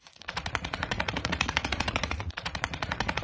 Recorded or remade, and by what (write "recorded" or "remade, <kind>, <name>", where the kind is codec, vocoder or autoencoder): remade, vocoder, Vocos